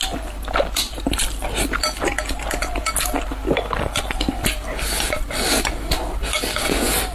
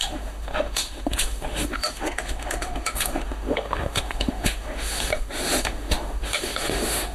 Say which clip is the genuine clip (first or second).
first